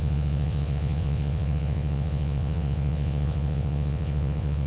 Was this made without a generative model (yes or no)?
no